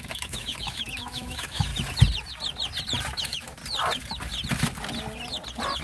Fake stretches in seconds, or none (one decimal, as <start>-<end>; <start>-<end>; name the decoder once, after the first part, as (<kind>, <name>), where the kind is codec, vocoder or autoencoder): 0.0-1.7 (autoencoder, DAC-VAE); 3.2-3.6